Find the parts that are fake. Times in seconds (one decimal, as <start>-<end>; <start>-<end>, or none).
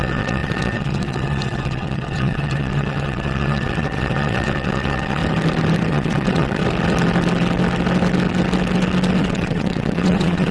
0.0-5.2; 5.9-6.6; 9.2-10.5